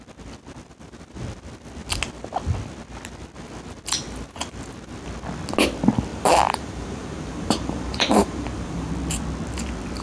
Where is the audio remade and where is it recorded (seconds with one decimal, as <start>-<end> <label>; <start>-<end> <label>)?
0.0-6.1 recorded; 6.1-8.9 remade; 8.9-10.0 recorded